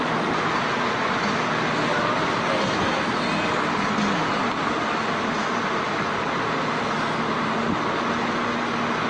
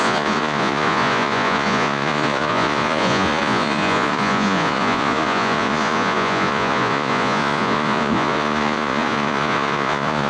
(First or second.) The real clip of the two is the first